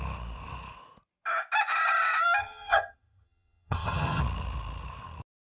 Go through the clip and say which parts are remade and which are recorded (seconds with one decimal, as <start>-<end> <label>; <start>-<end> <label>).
0.0-2.4 recorded; 2.4-4.2 remade; 4.2-5.5 recorded